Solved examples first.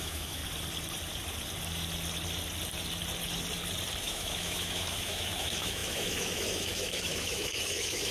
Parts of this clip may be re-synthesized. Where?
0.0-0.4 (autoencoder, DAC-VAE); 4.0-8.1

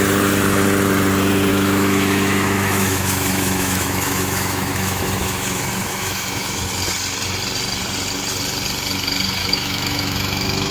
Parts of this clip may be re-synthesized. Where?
1.5-6.6 (autoencoder, DAC-VAE); 9.4-10.7

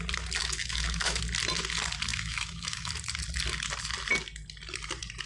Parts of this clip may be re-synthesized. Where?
0.4-1.2 (autoencoder, DAC-VAE); 2.1-2.9

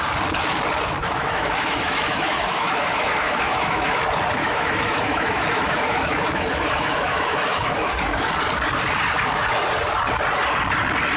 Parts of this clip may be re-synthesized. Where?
1.0-4.0 (autoencoder, DAC-VAE); 4.4-8.3

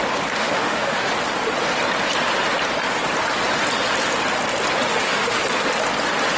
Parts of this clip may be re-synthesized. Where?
0.4-1.1 (autoencoder, DAC-VAE); 4.9-5.4

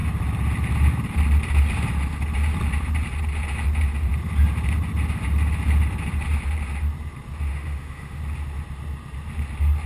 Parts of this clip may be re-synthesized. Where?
7.5-8.2 (autoencoder, DAC-VAE)

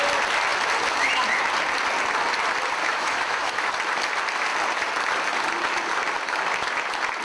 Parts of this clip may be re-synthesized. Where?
2.8-3.7 (autoencoder, DAC-VAE)